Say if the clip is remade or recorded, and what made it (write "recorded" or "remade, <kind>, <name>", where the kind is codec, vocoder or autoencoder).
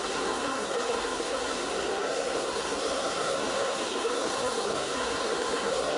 remade, codec, SNAC